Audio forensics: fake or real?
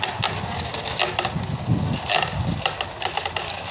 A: real